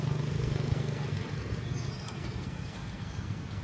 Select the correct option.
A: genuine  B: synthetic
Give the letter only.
B